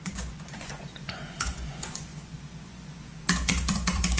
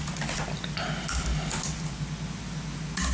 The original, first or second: second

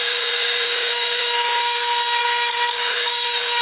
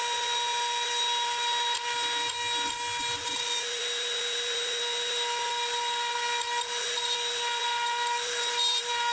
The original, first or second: second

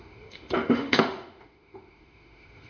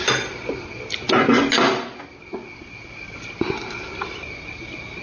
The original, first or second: second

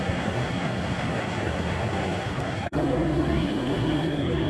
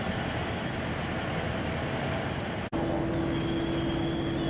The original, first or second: second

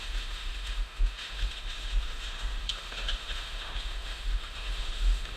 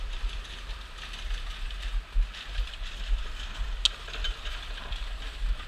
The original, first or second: second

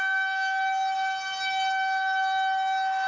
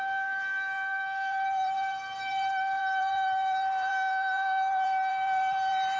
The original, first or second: first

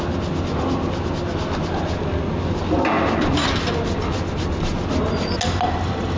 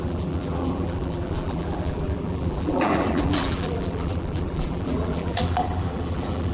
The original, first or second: first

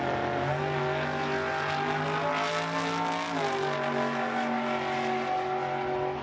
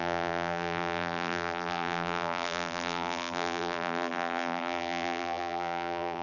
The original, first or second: first